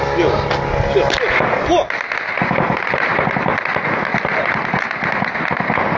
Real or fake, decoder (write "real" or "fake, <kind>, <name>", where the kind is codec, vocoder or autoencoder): real